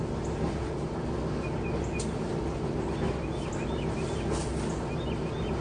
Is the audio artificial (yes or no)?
no